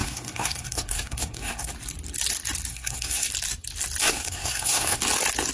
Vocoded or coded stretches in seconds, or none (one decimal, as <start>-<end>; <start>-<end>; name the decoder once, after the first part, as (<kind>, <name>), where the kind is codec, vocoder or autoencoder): 0.0-1.7 (codec, SNAC); 2.7-3.3; 4.0-5.0